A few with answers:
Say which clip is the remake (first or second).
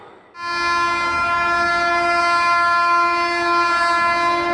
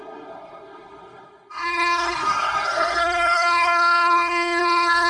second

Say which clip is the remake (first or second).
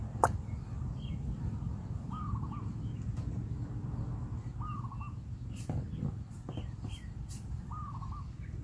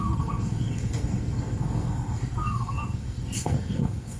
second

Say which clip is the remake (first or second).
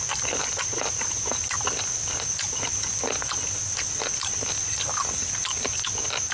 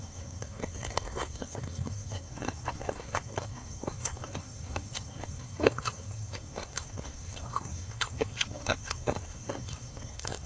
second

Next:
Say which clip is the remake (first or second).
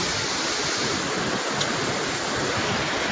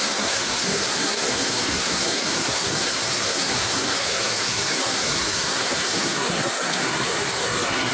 second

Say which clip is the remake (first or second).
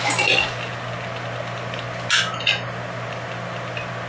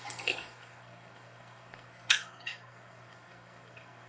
second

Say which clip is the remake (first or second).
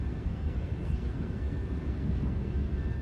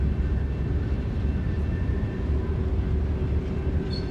first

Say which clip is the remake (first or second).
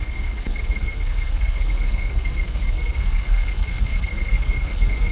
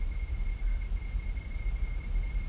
first